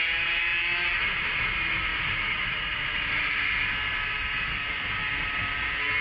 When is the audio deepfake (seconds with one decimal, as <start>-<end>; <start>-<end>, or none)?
none